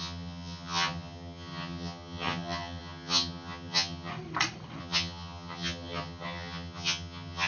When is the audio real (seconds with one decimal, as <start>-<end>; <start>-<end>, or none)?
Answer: 4.1-4.8